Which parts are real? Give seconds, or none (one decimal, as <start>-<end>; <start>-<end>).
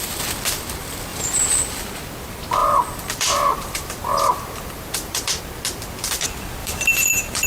0.0-2.6; 5.4-6.6